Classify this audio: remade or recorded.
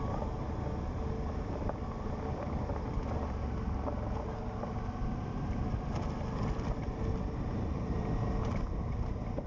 recorded